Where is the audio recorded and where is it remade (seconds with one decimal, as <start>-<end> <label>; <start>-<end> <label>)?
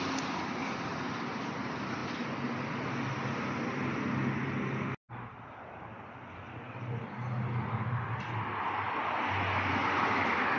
0.0-10.6 recorded